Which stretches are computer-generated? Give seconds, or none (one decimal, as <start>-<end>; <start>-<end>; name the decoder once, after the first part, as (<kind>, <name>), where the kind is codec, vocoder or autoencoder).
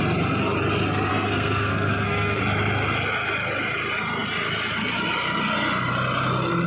1.1-2.4 (codec, SNAC)